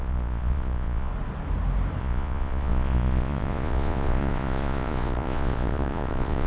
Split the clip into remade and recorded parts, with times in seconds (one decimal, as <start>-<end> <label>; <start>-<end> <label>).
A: 0.0-1.1 remade; 1.1-2.0 recorded; 2.0-6.5 remade